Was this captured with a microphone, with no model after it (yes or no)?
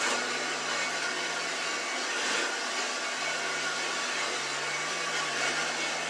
yes